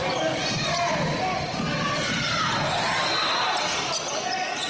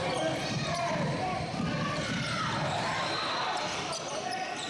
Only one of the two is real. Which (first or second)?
first